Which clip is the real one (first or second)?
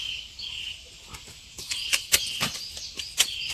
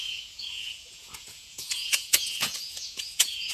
first